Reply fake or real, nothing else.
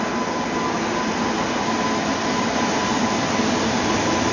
real